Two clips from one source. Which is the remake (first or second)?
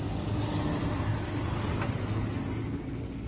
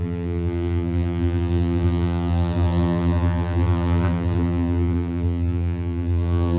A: second